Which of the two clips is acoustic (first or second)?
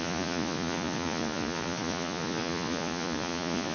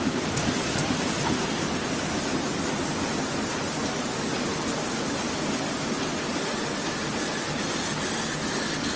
second